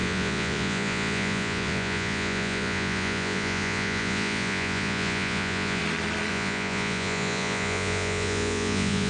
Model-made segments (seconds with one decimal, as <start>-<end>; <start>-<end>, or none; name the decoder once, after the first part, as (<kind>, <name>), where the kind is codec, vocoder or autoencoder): 0.0-5.8 (vocoder, Vocos); 6.3-9.1